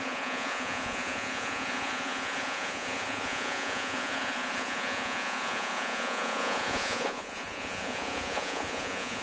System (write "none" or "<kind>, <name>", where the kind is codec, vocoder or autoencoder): vocoder, Vocos